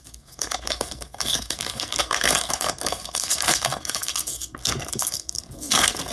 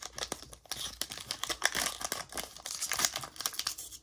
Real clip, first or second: second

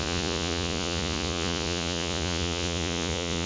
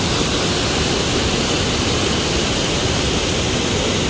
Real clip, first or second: second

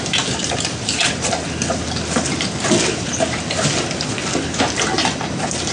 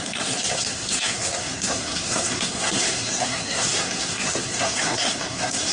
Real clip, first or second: first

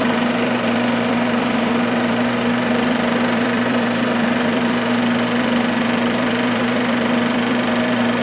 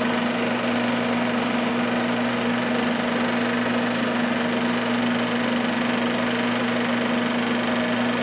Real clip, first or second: second